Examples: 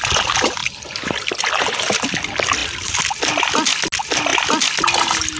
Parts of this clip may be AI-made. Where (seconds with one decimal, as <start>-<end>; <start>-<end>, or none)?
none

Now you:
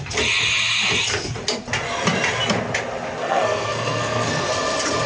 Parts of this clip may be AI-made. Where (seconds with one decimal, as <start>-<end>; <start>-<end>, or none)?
3.2-4.5

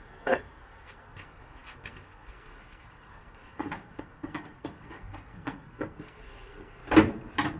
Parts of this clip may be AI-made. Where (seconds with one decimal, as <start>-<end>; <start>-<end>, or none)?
0.0-6.8

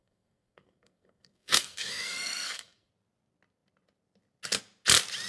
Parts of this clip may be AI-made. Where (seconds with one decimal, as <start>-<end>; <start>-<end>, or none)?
0.0-2.9